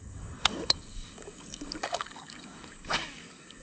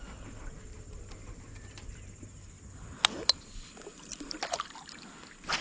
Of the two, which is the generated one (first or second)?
first